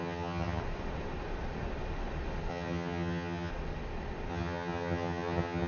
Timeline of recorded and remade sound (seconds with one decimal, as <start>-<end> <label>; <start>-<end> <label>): 0.0-0.6 remade; 0.6-2.5 recorded; 2.5-3.5 remade; 3.5-4.3 recorded; 4.3-5.7 remade